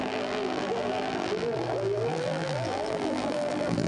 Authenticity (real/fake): fake